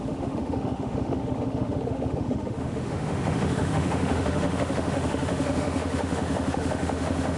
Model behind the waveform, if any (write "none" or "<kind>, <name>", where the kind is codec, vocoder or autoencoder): autoencoder, DAC-VAE